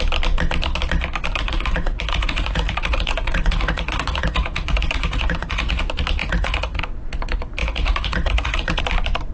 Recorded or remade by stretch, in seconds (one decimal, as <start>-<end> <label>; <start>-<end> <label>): 0.0-1.3 recorded; 1.3-5.8 remade; 5.8-6.2 recorded; 6.2-6.8 remade; 6.8-7.6 recorded; 7.6-8.8 remade; 8.8-9.3 recorded